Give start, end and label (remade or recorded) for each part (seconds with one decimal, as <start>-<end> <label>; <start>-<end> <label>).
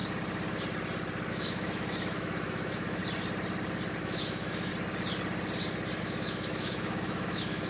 0.0-1.3 recorded; 1.3-3.0 remade; 3.0-4.0 recorded; 4.0-4.7 remade; 4.7-6.0 recorded; 6.0-7.7 remade